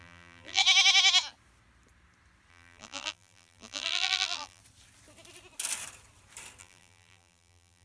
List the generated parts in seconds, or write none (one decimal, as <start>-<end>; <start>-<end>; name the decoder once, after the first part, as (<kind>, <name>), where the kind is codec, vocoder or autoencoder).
0.0-0.6 (vocoder, BigVGAN v2); 2.5-4.6; 6.6-7.8